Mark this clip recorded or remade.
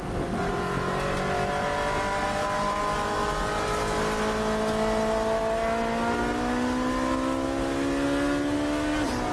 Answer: recorded